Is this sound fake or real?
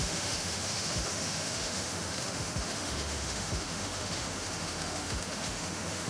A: fake